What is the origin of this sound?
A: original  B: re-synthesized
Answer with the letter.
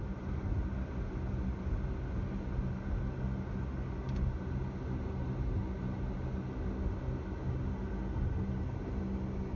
A